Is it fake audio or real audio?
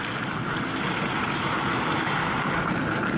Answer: real